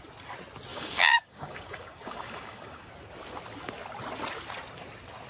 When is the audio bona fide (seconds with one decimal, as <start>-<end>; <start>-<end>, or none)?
0.0-0.7; 2.9-5.3